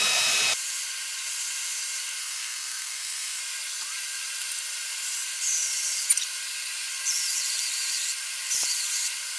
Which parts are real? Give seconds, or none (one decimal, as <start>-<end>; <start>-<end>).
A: 0.0-2.2; 3.4-9.4